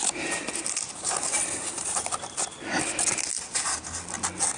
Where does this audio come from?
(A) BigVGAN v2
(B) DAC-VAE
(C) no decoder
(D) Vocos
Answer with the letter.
C